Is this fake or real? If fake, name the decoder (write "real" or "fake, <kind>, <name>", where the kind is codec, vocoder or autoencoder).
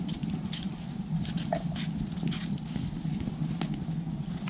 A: real